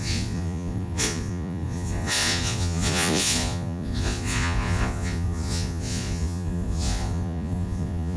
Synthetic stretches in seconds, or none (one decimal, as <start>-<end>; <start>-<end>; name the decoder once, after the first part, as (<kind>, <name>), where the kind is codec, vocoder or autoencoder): 0.0-8.2 (vocoder, Vocos)